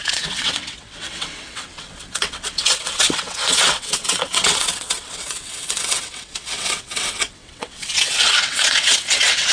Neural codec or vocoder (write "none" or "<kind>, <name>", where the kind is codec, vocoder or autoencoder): vocoder, WaveNeXt